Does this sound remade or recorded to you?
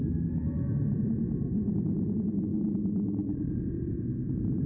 recorded